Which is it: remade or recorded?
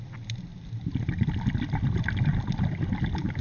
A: recorded